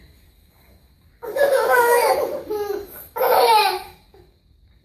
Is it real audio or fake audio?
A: fake